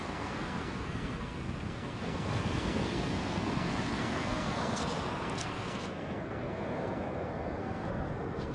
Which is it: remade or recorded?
remade